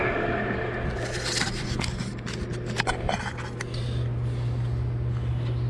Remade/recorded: recorded